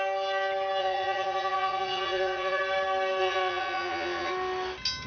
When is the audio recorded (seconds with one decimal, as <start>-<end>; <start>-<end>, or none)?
0.0-0.8; 2.6-3.2; 4.3-5.1